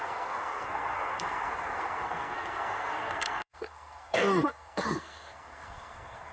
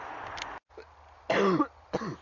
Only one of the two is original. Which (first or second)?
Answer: second